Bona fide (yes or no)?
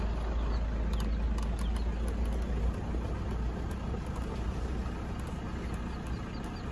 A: yes